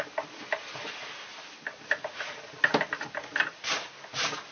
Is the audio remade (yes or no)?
no